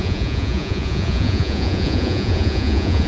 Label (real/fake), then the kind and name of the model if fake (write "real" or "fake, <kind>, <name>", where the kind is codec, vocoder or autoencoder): fake, vocoder, Vocos